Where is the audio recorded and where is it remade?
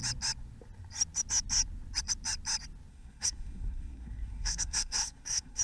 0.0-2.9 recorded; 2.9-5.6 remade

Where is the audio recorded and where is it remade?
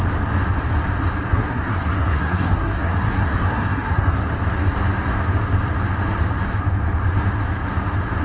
0.0-1.3 recorded; 1.3-4.2 remade; 4.2-8.2 recorded